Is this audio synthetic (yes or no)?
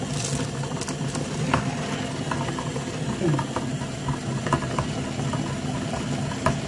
no